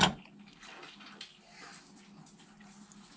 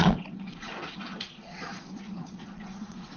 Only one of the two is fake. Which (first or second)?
second